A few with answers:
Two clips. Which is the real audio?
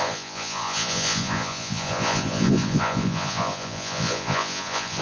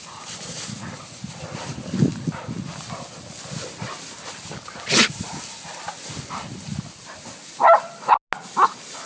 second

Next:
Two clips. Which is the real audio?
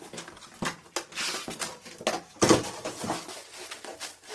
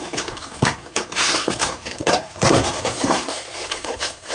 first